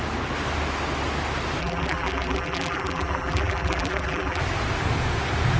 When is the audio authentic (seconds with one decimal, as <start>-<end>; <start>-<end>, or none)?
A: 0.0-1.6; 4.4-5.6